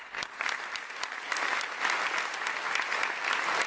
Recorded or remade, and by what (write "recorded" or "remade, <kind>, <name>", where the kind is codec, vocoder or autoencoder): recorded